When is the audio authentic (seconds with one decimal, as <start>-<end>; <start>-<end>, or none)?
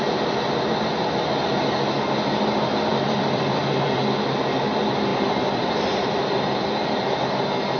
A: 0.0-2.9; 4.0-5.1; 7.2-7.8